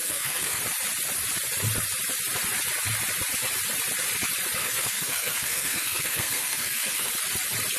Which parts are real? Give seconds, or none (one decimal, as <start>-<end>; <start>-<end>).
0.6-4.6; 7.1-7.8